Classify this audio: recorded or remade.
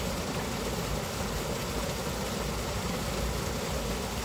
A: recorded